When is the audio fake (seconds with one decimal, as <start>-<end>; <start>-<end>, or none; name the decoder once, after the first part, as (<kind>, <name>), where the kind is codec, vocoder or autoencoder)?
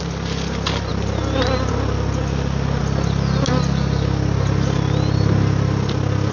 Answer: none